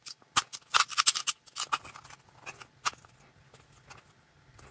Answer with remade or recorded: recorded